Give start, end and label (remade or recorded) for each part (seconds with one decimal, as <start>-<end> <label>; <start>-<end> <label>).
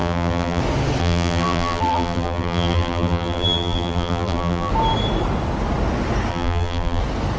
0.0-0.6 remade; 0.6-1.0 recorded; 1.0-4.7 remade; 4.7-6.3 recorded; 6.3-7.0 remade; 7.0-7.4 recorded